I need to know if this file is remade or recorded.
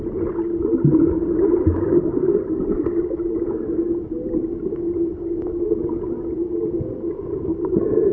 recorded